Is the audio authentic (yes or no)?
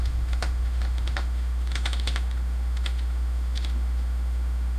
no